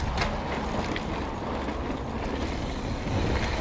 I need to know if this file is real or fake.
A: real